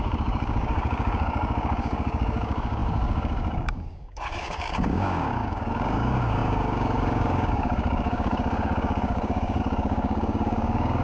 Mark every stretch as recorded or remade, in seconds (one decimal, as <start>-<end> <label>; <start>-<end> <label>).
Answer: 0.0-11.0 remade